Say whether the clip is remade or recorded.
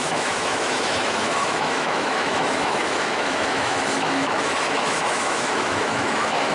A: remade